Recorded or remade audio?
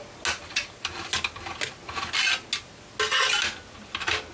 recorded